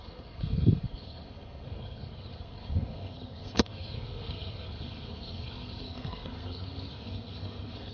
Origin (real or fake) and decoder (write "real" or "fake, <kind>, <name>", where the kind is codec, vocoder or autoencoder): fake, codec, SNAC